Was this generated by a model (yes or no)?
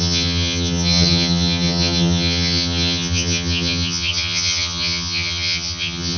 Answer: yes